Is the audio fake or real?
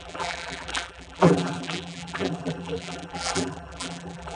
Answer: fake